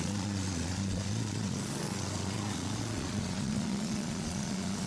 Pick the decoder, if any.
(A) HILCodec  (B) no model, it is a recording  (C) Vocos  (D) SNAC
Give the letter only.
C